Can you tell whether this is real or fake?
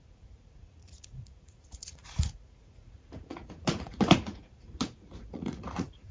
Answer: fake